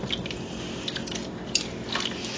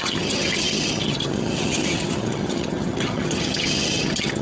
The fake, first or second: second